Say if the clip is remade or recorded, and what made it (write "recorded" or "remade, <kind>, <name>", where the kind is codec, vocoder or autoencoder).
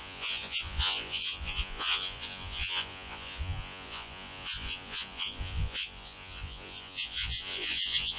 remade, vocoder, Vocos